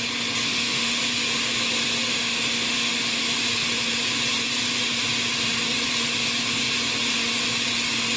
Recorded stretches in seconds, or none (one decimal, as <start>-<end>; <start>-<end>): 0.0-0.5; 1.0-2.1; 3.2-8.2